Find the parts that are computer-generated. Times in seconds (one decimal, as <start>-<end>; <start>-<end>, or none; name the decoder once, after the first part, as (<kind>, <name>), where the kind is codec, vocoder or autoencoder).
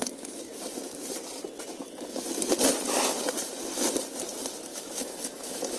0.0-0.5 (autoencoder, DAC-VAE); 4.7-5.8